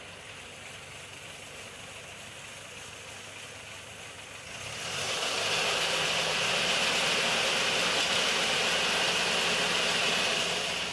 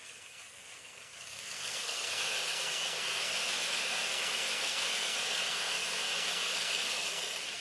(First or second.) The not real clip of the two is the second